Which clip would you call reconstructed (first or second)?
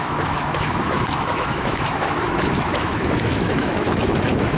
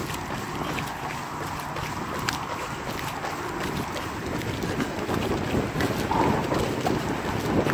first